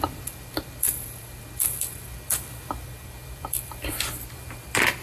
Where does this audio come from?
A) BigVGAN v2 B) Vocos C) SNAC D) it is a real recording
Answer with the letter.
A